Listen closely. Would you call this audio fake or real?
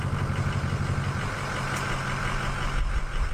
real